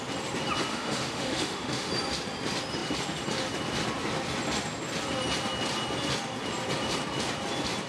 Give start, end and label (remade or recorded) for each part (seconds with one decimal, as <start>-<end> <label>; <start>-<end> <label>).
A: 0.0-0.7 recorded; 0.7-1.9 remade; 1.9-7.9 recorded